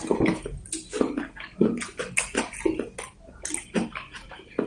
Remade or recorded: recorded